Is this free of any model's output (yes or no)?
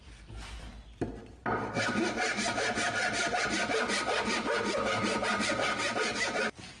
yes